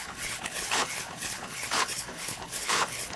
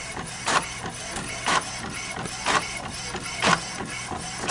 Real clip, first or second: second